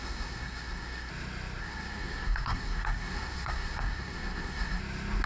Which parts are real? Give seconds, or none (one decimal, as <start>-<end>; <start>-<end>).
1.1-1.6; 4.8-5.3